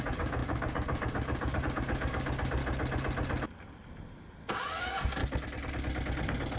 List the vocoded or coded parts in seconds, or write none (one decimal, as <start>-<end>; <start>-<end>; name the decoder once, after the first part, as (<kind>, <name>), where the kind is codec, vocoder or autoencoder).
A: 0.0-2.6 (codec, DAC); 4.8-5.2